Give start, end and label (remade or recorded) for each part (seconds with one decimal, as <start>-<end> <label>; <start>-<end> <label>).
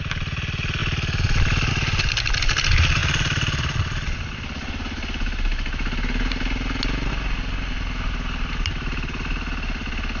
0.0-10.2 recorded